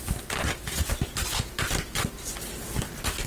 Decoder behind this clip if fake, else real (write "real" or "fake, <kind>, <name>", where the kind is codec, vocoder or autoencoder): real